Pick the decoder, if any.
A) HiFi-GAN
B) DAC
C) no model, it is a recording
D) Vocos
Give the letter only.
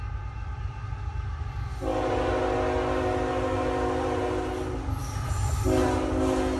C